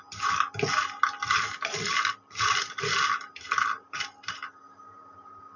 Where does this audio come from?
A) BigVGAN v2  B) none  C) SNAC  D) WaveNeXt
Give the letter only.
B